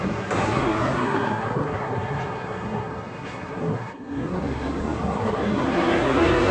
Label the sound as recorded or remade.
remade